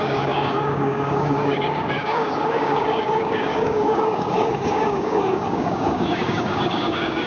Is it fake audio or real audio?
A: fake